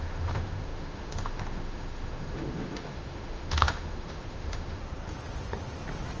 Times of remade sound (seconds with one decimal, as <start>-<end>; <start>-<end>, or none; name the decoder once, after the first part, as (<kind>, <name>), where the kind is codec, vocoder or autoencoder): 0.0-4.8 (autoencoder, DAC-VAE)